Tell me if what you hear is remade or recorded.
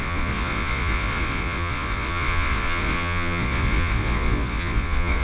remade